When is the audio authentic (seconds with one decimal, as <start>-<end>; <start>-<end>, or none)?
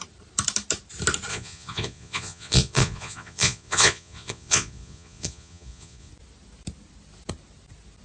0.0-1.3; 6.1-8.0